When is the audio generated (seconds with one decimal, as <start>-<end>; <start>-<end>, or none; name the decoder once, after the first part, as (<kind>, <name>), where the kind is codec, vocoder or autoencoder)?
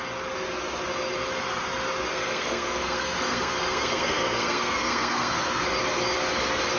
2.1-5.6 (codec, SNAC)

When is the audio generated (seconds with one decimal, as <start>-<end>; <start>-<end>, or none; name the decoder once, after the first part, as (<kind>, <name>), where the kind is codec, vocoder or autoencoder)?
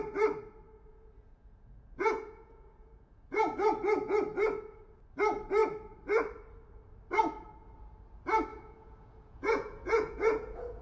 0.9-4.2 (vocoder, Vocos); 8.5-10.8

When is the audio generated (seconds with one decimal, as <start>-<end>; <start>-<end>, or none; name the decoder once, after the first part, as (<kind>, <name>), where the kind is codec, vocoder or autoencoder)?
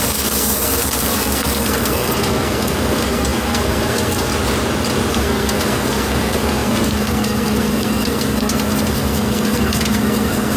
0.0-4.3 (codec, SNAC); 5.1-10.6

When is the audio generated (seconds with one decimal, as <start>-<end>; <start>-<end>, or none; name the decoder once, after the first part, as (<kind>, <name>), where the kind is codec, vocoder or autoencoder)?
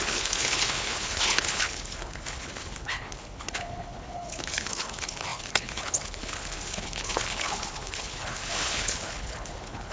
0.0-9.9 (codec, HILCodec)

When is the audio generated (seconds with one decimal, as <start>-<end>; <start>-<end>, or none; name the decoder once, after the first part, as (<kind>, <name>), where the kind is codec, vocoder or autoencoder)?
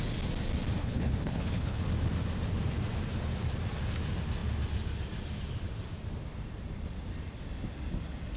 0.8-1.8 (codec, HILCodec)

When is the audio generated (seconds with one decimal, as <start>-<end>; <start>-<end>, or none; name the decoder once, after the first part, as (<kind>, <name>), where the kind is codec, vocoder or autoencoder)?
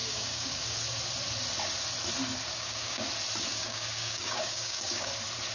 0.0-0.6 (codec, DAC); 2.5-3.1; 3.5-5.1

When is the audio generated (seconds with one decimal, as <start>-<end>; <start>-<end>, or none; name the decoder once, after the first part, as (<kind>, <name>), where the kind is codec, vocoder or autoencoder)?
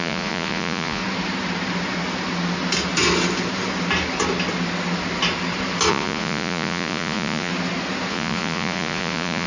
0.0-1.0 (vocoder, Vocos); 5.9-7.5; 8.1-9.5